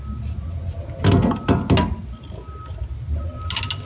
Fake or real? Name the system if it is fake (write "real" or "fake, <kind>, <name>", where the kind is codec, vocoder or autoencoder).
real